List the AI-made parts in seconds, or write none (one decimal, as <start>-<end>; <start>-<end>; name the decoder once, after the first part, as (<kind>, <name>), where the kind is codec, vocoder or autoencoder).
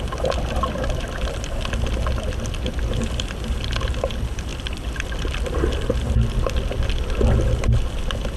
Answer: none